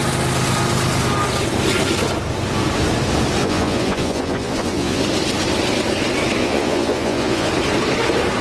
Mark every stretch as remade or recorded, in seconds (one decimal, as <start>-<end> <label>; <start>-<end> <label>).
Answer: 0.0-3.4 recorded; 3.4-5.0 remade; 5.0-6.4 recorded; 6.4-7.5 remade; 7.5-8.4 recorded